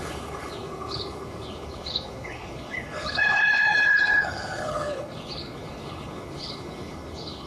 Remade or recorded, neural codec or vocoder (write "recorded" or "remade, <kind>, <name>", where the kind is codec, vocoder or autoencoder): remade, codec, HILCodec